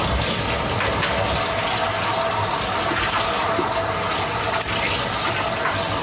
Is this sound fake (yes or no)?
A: no